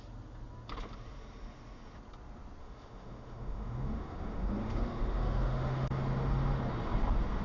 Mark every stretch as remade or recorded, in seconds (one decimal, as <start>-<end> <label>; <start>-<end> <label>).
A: 0.0-2.6 recorded; 2.6-5.9 remade; 5.9-7.4 recorded